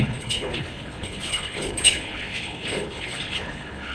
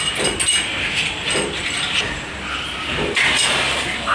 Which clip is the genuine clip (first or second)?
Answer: second